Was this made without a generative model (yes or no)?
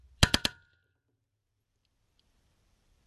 yes